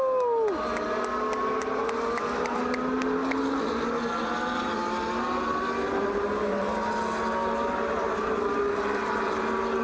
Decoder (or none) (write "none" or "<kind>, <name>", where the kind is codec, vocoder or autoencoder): none